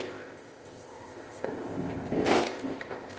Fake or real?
fake